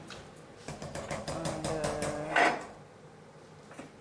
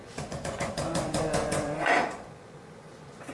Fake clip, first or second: second